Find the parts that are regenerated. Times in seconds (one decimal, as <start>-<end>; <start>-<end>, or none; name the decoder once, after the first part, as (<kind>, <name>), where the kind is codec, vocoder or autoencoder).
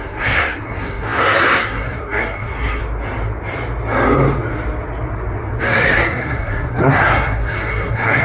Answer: 0.0-2.8 (codec, SNAC); 5.6-8.2